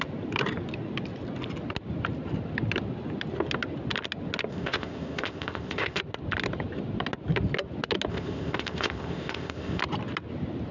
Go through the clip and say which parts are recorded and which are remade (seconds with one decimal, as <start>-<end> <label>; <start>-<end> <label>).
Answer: 0.0-4.5 recorded; 4.5-6.0 remade; 6.0-8.1 recorded; 8.1-9.8 remade; 9.8-10.7 recorded

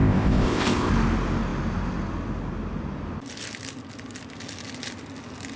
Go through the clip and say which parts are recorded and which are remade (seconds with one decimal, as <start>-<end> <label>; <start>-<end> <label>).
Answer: 0.0-0.9 remade; 0.9-5.6 recorded

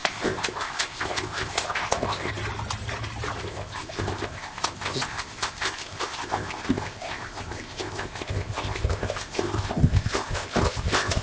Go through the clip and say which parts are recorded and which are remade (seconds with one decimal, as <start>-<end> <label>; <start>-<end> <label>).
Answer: 0.0-2.3 remade; 2.3-3.4 recorded; 3.4-11.2 remade

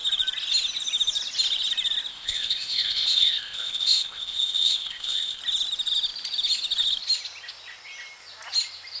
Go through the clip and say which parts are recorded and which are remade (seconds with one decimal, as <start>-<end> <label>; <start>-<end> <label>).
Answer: 0.0-2.1 recorded; 2.1-5.4 remade; 5.4-9.0 recorded

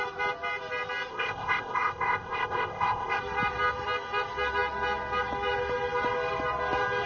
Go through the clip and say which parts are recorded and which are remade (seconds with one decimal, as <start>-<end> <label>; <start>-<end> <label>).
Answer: 0.0-1.1 recorded; 1.1-3.2 remade; 3.2-7.1 recorded

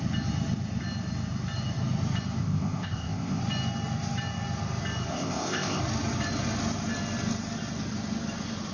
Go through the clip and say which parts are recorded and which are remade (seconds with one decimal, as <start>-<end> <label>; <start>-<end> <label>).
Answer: 0.0-2.4 recorded; 2.4-3.4 remade; 3.4-5.1 recorded; 5.1-5.8 remade; 5.8-8.7 recorded